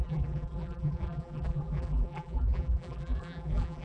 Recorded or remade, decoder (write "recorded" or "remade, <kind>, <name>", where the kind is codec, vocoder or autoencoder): remade, vocoder, BigVGAN v2